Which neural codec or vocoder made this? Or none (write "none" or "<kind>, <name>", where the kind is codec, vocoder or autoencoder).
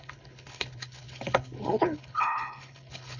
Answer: codec, HILCodec